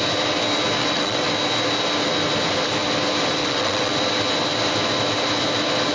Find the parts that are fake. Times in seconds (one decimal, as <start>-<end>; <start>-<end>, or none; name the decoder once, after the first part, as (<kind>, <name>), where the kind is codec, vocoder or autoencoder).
0.8-1.3 (vocoder, WaveNeXt); 3.4-3.9